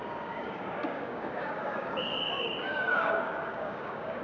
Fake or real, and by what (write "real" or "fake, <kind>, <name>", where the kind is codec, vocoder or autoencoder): fake, codec, DAC